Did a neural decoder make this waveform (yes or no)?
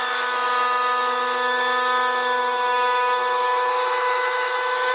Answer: yes